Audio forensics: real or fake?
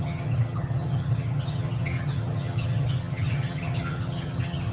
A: fake